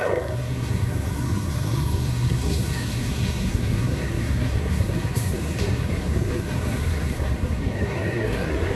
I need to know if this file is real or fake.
fake